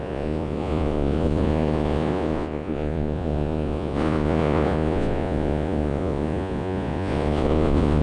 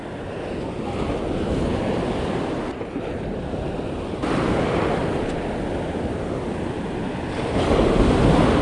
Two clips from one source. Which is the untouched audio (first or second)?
second